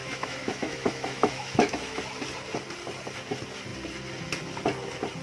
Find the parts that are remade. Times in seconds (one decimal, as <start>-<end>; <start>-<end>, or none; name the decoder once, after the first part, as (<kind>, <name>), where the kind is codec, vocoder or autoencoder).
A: 0.0-2.0 (autoencoder, DAC-VAE)